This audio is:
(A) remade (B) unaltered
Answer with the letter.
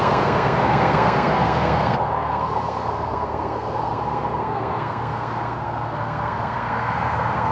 A